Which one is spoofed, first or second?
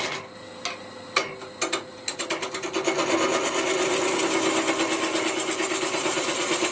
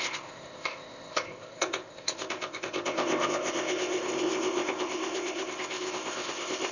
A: second